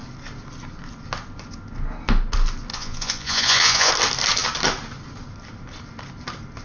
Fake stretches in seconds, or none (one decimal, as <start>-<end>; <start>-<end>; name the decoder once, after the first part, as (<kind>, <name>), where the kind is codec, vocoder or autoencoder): 2.7-3.9 (vocoder, Vocos)